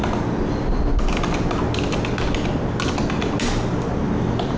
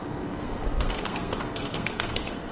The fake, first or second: second